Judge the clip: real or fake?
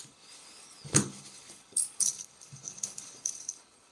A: fake